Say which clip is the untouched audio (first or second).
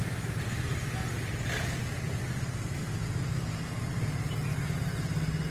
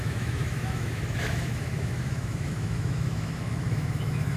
first